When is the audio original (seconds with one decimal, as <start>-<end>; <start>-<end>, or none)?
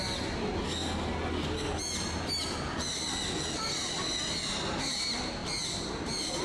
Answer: 0.0-6.4